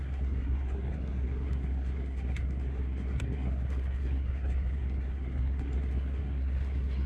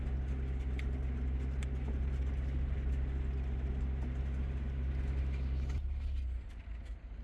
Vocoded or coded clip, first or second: first